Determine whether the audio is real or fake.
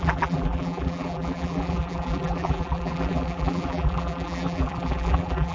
fake